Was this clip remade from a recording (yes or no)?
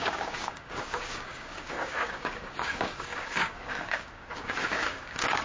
yes